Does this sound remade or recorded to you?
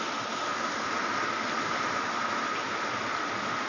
recorded